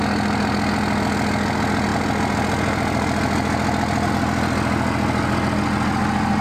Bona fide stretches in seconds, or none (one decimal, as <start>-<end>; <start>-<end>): 0.0-6.4